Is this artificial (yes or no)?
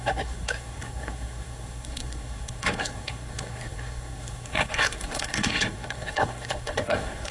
yes